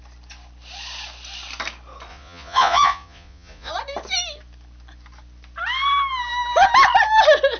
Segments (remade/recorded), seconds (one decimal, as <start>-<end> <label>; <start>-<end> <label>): 0.0-2.1 recorded; 2.1-3.7 remade; 3.7-7.6 recorded